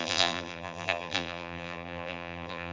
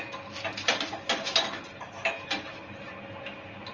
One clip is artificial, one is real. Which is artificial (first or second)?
first